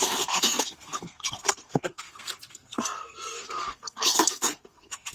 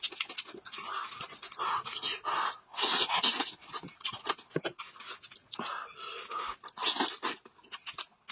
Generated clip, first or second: first